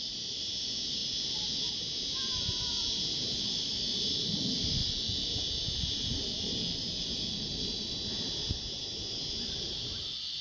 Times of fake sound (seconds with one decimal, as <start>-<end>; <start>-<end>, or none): none